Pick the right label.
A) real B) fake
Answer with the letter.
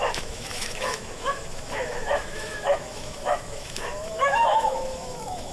B